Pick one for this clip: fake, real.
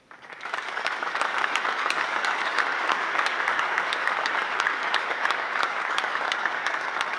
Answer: fake